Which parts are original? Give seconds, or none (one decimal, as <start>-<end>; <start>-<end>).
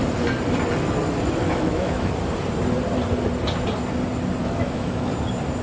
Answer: 0.0-1.4; 2.1-4.4; 5.1-5.6